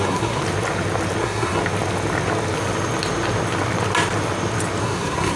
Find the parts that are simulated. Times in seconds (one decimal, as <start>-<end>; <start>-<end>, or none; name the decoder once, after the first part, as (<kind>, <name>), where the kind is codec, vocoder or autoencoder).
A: 0.0-0.4 (codec, SNAC); 1.2-1.6; 4.8-5.4